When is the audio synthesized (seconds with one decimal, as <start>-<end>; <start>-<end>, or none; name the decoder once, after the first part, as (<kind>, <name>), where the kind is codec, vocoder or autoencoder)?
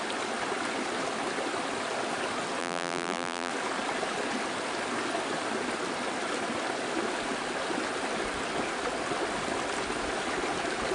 2.6-3.5 (vocoder, BigVGAN v2)